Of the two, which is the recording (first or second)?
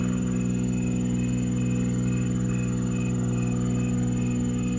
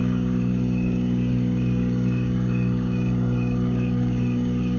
first